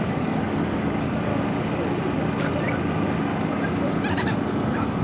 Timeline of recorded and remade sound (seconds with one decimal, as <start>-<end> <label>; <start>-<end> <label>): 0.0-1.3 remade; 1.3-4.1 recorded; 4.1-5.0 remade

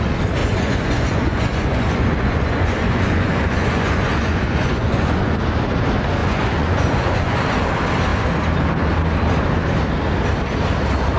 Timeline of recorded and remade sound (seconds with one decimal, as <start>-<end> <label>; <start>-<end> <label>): 0.0-0.4 recorded; 0.4-5.4 remade; 5.4-6.2 recorded; 6.2-7.6 remade; 7.6-11.2 recorded

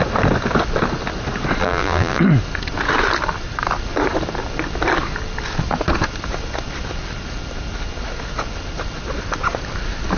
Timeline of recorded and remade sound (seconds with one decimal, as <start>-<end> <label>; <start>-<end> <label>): 0.0-1.6 recorded; 1.6-2.2 remade; 2.2-10.2 recorded